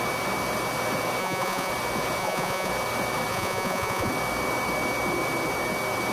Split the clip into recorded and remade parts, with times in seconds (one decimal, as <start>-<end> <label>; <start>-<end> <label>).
0.0-1.2 recorded; 1.2-1.7 remade; 1.7-2.2 recorded; 2.2-2.7 remade; 2.7-3.3 recorded; 3.3-4.1 remade; 4.1-6.1 recorded